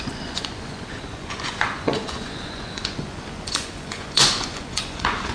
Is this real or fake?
fake